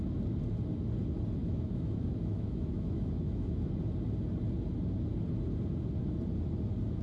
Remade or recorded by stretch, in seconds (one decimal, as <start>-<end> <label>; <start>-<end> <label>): 0.0-1.4 recorded; 1.4-3.7 remade; 3.7-7.0 recorded